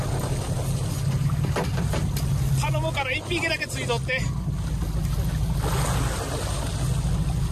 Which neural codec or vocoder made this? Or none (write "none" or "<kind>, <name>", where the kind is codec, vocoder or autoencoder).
none